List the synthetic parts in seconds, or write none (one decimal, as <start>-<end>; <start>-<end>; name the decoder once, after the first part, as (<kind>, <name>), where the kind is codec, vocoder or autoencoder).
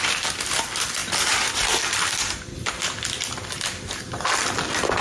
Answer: none